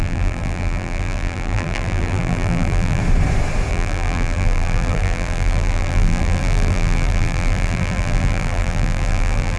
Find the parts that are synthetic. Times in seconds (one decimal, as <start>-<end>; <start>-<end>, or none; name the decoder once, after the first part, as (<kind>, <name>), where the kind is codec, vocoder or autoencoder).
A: 0.0-3.0 (vocoder, BigVGAN v2); 3.7-9.6